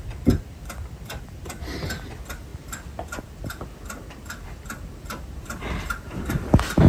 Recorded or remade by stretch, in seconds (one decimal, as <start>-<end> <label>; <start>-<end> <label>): 0.0-2.5 remade; 2.5-3.2 recorded; 3.2-6.9 remade